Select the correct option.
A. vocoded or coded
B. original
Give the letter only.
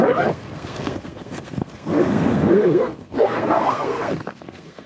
A